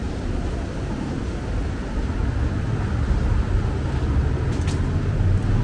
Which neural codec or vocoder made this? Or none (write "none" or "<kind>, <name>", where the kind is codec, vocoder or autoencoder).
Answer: none